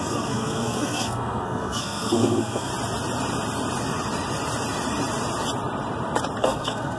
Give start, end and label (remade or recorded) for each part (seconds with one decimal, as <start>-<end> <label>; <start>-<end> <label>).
0.0-2.7 remade; 2.7-6.4 recorded; 6.4-7.0 remade